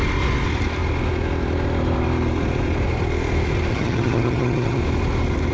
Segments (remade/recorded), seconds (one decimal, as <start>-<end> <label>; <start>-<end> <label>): 0.0-3.7 recorded; 3.7-4.8 remade; 4.8-5.5 recorded